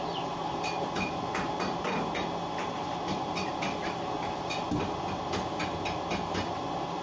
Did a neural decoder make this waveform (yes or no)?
no